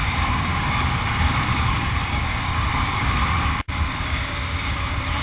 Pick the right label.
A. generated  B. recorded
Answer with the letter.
A